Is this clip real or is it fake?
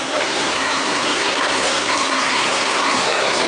fake